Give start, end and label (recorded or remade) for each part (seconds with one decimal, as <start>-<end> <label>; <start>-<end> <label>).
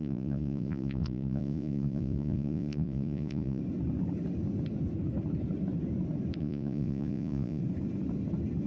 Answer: 0.0-3.6 remade; 3.6-6.4 recorded; 6.4-7.6 remade; 7.6-8.7 recorded